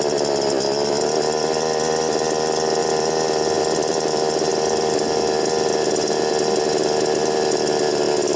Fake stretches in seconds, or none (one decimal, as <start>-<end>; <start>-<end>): 0.0-8.4